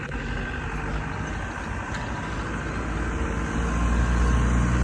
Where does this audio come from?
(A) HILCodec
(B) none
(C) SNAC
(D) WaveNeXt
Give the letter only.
B